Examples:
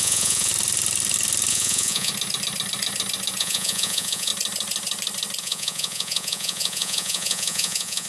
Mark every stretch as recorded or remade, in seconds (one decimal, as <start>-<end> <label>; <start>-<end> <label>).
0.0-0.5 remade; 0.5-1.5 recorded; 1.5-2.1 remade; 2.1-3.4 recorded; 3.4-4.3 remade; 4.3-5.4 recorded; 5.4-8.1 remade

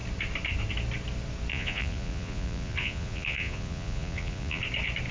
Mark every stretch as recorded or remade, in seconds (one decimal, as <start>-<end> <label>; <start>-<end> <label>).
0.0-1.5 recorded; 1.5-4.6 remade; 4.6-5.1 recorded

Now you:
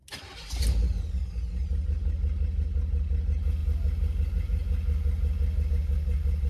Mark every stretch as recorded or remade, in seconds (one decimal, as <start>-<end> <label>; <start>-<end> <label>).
0.0-6.5 recorded

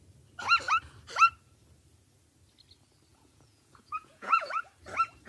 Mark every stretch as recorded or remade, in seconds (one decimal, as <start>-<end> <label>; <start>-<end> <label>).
0.0-3.1 recorded; 3.1-4.6 remade; 4.6-5.3 recorded

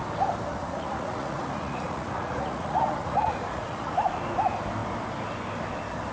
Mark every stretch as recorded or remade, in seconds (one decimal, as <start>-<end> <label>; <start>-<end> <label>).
0.0-0.5 recorded; 0.5-4.2 remade; 4.2-6.1 recorded